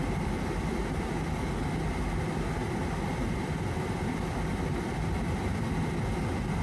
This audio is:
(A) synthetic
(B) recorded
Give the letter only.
B